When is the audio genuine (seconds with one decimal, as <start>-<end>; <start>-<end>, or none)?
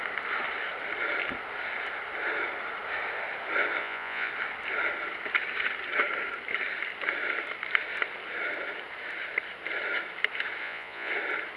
0.0-3.8; 4.3-10.6; 11.1-11.6